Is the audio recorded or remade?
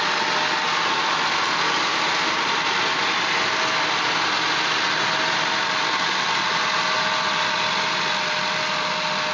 recorded